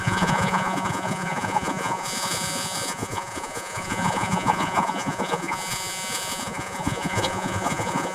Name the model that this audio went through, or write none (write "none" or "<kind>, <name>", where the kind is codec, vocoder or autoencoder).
vocoder, Vocos